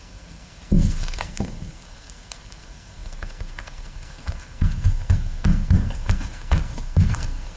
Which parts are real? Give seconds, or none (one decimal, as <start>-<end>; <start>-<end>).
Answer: none

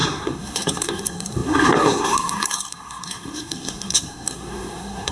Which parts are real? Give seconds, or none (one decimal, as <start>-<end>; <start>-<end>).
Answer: none

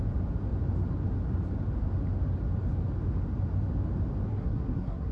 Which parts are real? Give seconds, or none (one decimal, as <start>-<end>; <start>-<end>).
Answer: 0.0-4.3

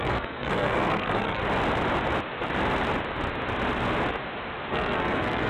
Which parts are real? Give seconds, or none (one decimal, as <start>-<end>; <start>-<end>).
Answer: 1.4-4.7

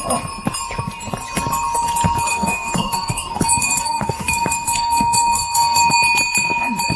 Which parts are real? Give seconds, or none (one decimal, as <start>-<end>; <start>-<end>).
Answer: 0.0-2.3; 5.9-7.0

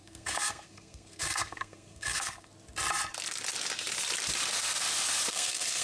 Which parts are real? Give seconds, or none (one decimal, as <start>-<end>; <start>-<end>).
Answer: 2.5-5.3

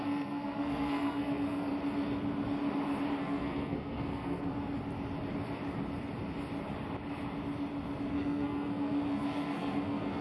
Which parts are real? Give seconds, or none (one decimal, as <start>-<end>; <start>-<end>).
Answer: 1.7-3.2; 4.5-8.1

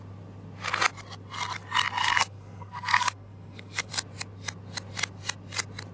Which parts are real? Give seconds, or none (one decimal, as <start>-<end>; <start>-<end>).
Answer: 0.0-2.0; 3.9-5.9